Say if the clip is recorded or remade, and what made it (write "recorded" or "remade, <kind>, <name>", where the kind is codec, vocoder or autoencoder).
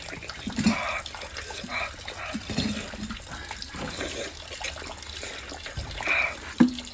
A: recorded